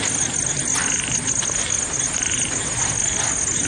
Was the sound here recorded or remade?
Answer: recorded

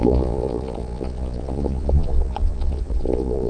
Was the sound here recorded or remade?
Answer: remade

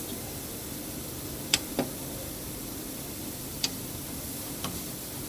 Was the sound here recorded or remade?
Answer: remade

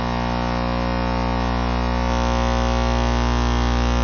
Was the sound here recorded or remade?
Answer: recorded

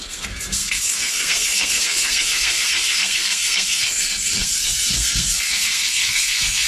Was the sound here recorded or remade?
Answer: remade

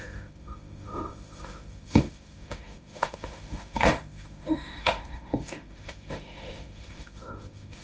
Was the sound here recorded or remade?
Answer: remade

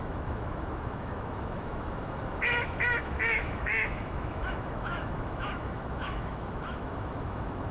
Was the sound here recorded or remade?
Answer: remade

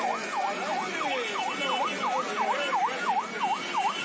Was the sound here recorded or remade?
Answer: recorded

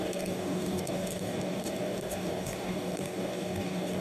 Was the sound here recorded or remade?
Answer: remade